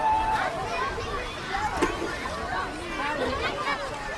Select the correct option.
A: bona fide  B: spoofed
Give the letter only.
A